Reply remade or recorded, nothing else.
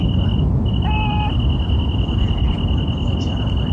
recorded